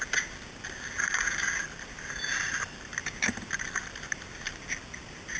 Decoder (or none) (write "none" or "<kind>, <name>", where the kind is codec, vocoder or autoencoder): none